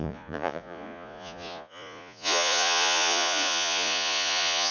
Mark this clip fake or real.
fake